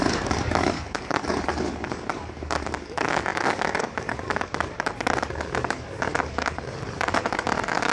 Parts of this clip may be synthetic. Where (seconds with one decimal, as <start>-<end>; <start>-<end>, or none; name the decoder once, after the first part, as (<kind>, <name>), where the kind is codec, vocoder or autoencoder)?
0.0-7.9 (codec, DAC)

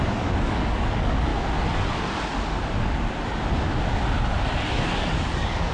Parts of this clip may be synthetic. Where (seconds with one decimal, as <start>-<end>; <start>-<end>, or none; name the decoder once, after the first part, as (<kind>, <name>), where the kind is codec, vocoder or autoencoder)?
0.0-1.3 (codec, DAC); 4.7-5.7

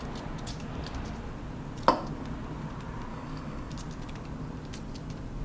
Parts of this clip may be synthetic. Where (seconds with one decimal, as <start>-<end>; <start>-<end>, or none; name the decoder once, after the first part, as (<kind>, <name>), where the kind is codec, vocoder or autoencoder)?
3.1-3.7 (codec, DAC)

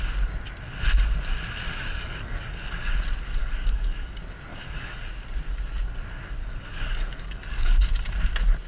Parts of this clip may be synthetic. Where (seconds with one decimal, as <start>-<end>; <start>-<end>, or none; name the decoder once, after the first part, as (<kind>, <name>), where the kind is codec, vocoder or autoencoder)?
1.7-2.9 (codec, DAC); 3.4-4.1; 4.5-5.0; 6.4-7.9

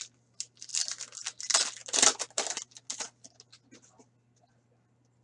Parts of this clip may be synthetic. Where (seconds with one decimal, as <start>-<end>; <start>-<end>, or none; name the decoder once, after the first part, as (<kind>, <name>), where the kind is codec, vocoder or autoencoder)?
none

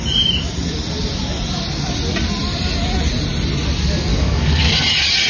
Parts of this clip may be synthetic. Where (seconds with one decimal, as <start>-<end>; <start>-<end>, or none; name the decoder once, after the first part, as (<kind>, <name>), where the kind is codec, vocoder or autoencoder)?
4.1-4.7 (codec, DAC)